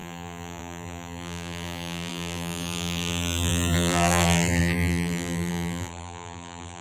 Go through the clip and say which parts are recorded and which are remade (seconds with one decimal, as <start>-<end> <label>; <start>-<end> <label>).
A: 0.0-6.8 remade